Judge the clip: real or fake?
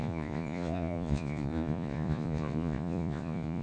fake